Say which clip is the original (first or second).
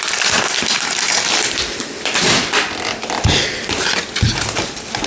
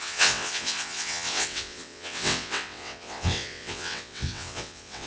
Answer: first